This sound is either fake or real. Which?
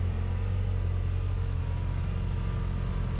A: real